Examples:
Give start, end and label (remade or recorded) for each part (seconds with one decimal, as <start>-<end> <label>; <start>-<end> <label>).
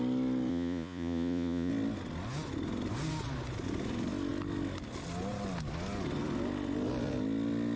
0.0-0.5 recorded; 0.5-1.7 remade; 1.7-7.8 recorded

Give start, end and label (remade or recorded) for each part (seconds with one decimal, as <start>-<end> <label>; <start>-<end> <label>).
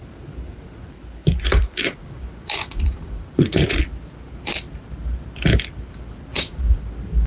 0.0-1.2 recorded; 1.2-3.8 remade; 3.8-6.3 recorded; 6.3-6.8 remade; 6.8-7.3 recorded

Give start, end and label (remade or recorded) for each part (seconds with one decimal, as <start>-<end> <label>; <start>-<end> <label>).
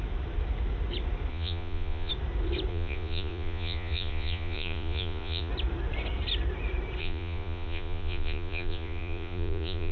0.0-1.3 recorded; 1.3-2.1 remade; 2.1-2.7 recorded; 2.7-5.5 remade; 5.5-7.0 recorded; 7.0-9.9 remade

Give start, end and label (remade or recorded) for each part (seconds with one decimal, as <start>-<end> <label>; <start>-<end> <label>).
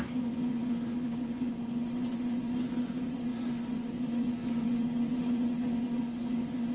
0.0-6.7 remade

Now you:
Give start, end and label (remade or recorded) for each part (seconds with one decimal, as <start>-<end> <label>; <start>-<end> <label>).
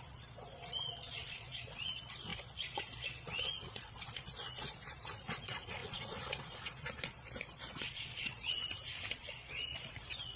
0.0-8.6 remade; 8.6-9.1 recorded; 9.1-10.4 remade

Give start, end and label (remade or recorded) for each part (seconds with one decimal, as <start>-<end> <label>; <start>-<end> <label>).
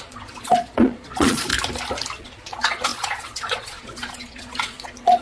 0.0-1.5 remade; 1.5-2.2 recorded; 2.2-5.2 remade